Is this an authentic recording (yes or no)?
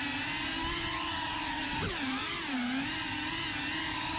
yes